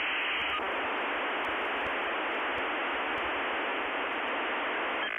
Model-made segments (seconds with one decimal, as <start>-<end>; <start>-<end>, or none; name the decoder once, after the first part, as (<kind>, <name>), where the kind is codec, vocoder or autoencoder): 3.7-4.3 (vocoder, BigVGAN v2)